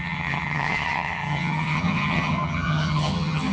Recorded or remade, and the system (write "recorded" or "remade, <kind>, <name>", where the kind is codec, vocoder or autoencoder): remade, vocoder, HiFi-GAN